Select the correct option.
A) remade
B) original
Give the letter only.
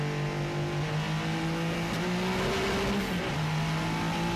B